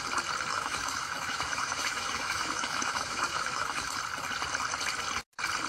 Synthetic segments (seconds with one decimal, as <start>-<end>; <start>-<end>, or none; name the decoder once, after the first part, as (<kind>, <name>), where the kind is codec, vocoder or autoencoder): 0.5-3.9 (autoencoder, DAC-VAE)